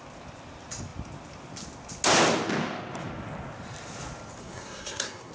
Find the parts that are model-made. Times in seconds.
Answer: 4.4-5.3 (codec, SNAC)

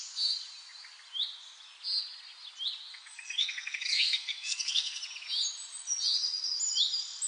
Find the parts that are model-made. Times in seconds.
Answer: 2.9-5.0 (codec, SNAC)

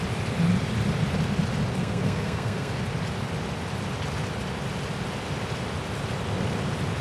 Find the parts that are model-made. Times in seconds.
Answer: 1.8-2.7 (codec, SNAC)

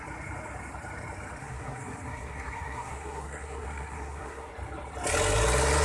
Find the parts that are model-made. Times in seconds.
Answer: 1.4-4.5 (codec, SNAC)